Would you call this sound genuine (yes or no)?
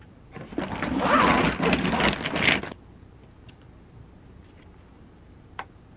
yes